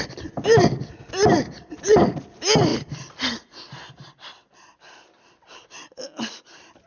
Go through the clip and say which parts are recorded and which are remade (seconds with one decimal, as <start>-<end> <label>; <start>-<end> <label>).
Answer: 0.0-6.9 recorded

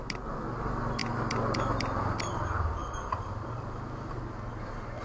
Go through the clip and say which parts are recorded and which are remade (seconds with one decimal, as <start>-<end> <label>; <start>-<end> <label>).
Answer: 0.0-5.0 recorded

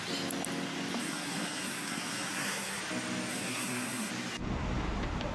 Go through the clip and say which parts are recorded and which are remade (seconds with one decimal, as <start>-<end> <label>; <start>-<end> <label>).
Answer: 0.0-1.0 recorded; 1.0-2.8 remade; 2.8-3.3 recorded; 3.3-4.1 remade; 4.1-5.3 recorded

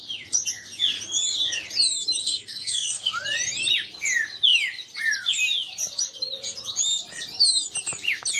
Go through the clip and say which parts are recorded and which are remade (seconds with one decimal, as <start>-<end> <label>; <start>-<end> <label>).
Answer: 0.0-2.2 recorded; 2.2-3.1 remade; 3.1-8.4 recorded